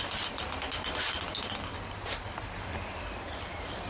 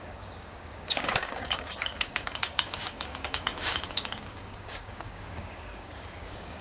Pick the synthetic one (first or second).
second